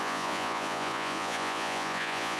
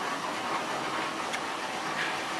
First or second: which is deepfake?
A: first